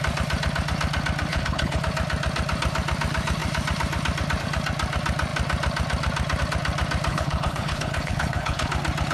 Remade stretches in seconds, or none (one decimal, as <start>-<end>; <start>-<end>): 1.3-1.8; 7.1-8.7